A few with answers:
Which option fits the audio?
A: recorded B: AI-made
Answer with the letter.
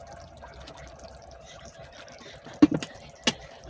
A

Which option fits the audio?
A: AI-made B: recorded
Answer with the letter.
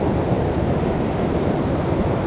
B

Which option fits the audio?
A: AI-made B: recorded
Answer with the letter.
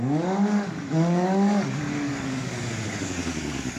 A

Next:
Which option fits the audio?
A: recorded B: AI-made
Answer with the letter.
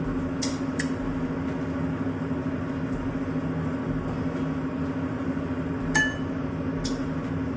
A